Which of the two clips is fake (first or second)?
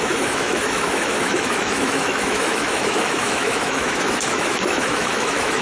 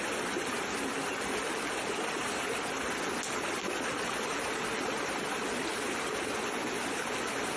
first